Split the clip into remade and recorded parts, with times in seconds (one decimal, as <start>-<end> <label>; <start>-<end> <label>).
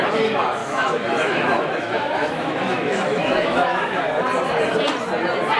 0.0-0.6 recorded; 0.6-4.0 remade; 4.0-5.6 recorded